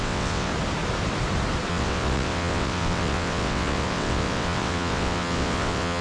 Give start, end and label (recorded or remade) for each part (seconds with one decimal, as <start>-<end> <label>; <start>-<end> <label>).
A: 0.0-0.5 remade; 0.5-1.7 recorded; 1.7-6.0 remade